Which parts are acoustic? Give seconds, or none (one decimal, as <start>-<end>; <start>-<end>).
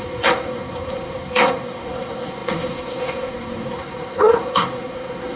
none